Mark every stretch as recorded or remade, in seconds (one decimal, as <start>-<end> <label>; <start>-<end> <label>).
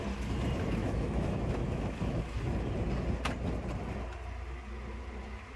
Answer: 0.0-0.8 recorded; 0.8-2.4 remade; 2.4-5.6 recorded